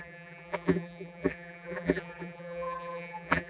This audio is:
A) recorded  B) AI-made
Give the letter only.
B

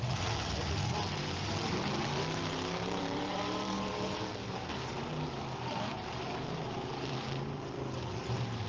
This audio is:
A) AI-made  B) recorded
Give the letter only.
A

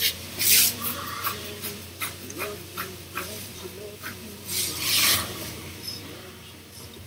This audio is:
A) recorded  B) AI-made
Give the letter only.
B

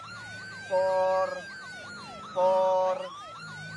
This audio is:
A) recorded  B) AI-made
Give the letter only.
A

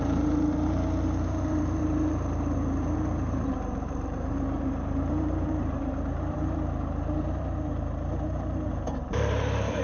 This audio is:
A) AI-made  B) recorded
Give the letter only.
A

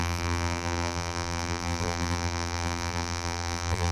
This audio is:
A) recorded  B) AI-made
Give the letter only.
B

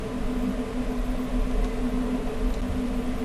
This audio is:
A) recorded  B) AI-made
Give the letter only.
A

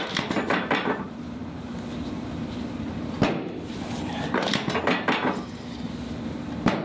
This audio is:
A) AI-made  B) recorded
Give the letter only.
B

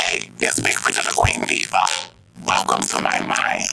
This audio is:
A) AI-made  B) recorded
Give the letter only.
A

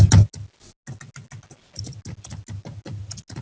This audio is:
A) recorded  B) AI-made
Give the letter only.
A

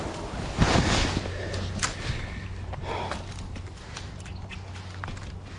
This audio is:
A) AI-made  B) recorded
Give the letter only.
B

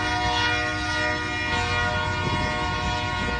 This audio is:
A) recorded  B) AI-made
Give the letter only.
A